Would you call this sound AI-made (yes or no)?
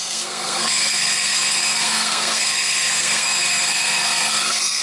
yes